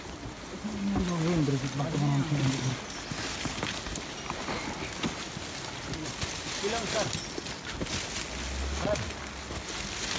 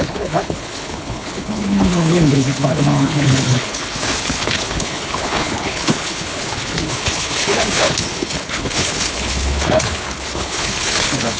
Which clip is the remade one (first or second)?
second